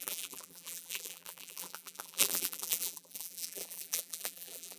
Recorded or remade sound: remade